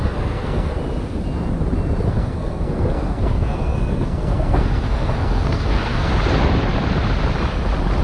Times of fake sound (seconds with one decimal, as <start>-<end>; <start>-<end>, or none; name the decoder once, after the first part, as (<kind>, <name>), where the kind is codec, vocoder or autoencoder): 0.0-0.8 (codec, SNAC); 2.1-6.1